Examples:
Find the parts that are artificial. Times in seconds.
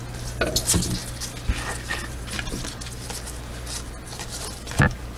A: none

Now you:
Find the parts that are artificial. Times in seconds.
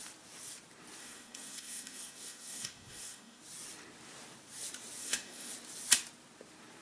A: 1.0-3.4; 5.0-5.5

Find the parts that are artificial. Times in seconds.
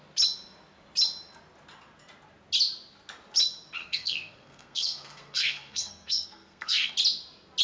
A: 3.8-6.9